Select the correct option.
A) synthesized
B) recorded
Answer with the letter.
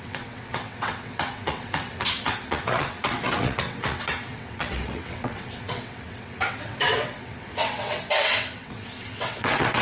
A